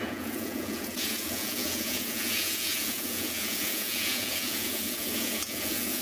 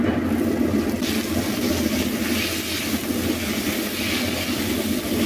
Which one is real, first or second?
second